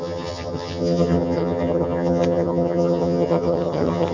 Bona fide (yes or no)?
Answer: no